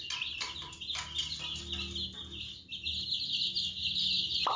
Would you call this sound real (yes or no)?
yes